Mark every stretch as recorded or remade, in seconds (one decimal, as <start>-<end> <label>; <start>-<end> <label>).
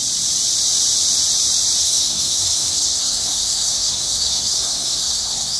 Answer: 0.0-1.8 recorded; 1.8-5.6 remade